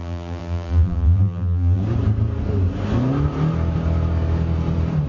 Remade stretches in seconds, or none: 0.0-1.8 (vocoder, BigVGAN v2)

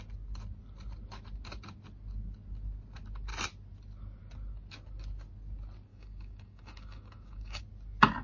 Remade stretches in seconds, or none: 5.9-7.6 (codec, DAC)

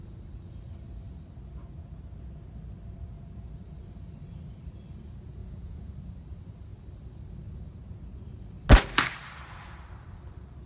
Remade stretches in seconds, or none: 5.4-5.9 (vocoder, Vocos)